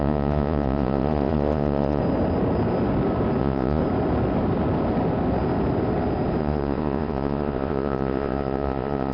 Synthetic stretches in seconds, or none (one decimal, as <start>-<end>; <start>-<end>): 0.0-2.0; 3.4-3.8; 6.4-9.1